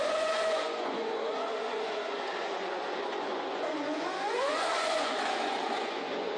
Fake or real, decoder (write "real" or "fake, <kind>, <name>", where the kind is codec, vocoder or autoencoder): fake, vocoder, Vocos